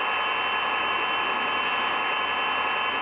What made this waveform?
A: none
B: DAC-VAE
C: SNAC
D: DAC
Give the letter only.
A